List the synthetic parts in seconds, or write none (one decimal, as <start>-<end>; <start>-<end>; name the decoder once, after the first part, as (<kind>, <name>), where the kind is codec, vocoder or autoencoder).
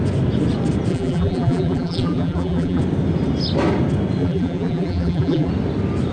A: 0.9-2.8 (vocoder, BigVGAN v2); 4.2-5.5